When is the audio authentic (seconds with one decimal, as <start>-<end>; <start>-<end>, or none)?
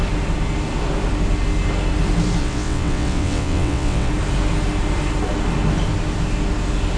0.0-2.4; 4.1-7.0